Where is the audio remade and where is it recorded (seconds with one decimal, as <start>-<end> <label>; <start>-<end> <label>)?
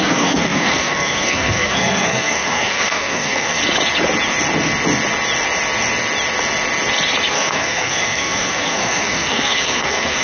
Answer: 0.0-3.6 remade; 3.6-7.3 recorded; 7.3-10.2 remade